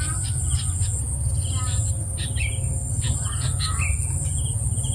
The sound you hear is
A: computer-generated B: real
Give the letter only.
B